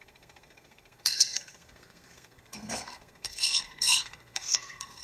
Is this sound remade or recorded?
remade